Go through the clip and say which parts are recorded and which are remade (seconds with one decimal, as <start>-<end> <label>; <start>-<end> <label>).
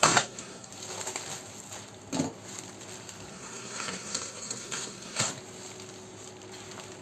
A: 0.0-0.7 remade; 0.7-3.3 recorded; 3.3-5.3 remade; 5.3-7.0 recorded